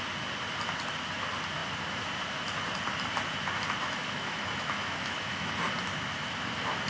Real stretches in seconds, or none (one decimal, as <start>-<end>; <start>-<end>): 0.0-3.8; 5.5-6.9